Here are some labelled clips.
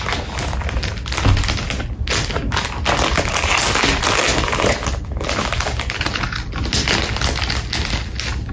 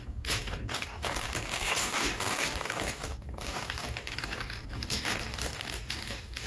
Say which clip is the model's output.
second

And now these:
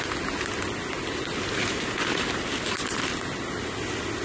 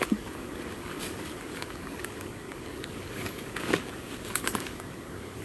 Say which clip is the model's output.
second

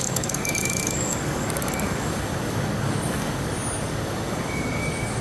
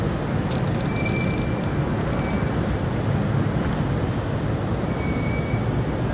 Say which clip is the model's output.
first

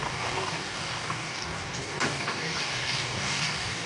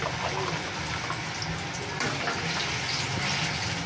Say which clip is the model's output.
first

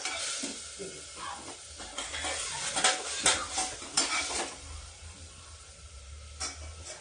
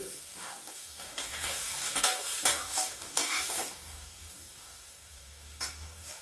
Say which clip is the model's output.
second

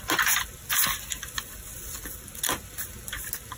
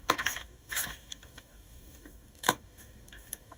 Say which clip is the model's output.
second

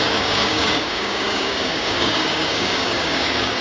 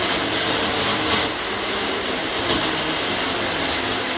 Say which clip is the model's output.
first